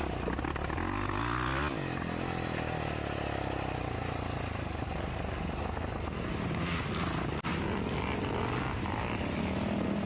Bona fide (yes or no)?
yes